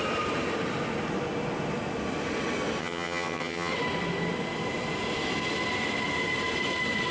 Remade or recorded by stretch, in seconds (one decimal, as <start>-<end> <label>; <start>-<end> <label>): 0.0-2.8 recorded; 2.8-3.7 remade; 3.7-7.1 recorded